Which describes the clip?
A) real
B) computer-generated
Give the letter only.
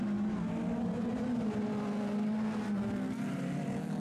A